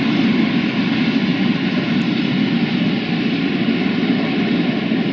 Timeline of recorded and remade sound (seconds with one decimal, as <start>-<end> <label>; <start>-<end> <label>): 0.0-5.1 recorded